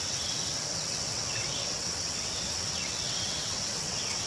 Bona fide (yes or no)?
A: no